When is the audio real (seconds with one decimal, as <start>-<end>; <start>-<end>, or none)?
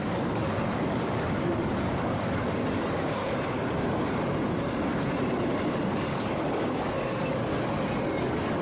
3.2-5.7; 7.5-8.2